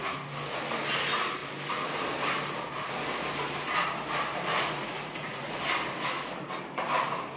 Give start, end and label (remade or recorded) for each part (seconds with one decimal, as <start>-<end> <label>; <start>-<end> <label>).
0.0-4.5 recorded; 4.5-5.6 remade; 5.6-7.4 recorded